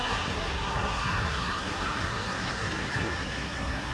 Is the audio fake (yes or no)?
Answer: yes